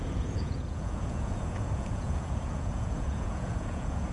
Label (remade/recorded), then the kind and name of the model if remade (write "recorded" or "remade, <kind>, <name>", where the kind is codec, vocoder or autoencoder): remade, vocoder, Vocos